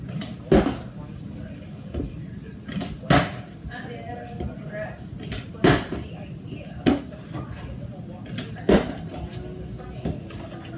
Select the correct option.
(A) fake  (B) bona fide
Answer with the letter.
B